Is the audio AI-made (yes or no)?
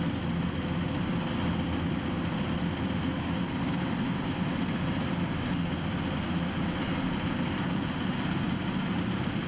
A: no